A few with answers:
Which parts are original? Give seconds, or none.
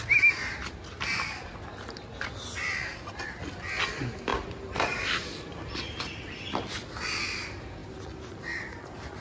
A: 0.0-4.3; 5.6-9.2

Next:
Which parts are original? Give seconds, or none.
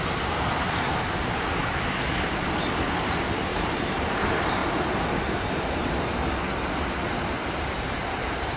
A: 1.6-3.0; 6.2-7.3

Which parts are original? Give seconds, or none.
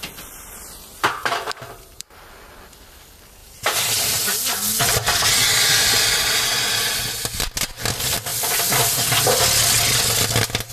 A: 0.0-1.2; 2.3-3.4; 4.2-10.7